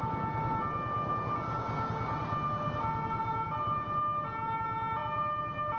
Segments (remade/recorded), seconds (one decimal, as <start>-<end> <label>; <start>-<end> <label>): 0.0-5.8 recorded